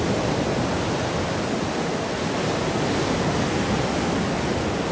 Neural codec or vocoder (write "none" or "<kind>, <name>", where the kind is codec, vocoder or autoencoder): none